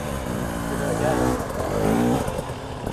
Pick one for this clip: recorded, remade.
remade